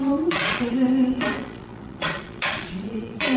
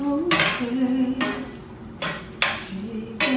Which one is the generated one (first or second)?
first